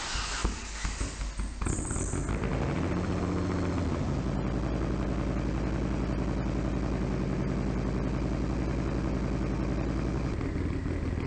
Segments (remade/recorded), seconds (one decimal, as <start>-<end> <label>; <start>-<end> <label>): 0.0-0.4 recorded; 0.4-1.3 remade; 1.3-11.3 recorded